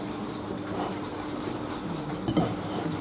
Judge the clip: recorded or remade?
recorded